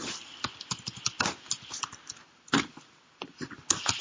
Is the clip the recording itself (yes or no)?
yes